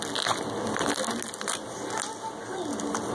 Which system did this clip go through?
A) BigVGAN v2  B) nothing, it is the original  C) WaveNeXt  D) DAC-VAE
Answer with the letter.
B